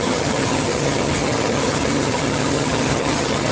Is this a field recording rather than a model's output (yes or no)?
no